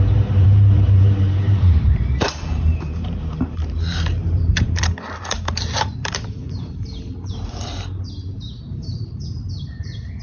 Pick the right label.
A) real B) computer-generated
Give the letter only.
B